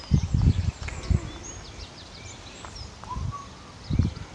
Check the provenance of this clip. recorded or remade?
recorded